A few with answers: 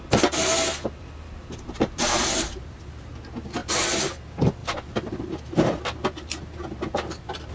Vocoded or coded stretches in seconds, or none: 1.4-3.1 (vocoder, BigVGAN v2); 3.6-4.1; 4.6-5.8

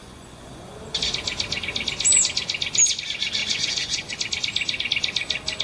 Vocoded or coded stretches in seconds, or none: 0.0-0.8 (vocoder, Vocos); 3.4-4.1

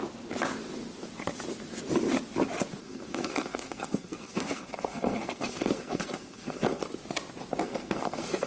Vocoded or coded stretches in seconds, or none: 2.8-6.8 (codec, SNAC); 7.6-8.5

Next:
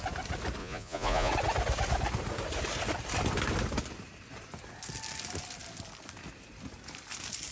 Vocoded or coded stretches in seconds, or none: 0.6-1.3 (vocoder, Vocos)